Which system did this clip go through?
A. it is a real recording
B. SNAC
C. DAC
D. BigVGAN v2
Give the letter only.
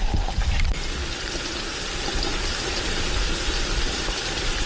A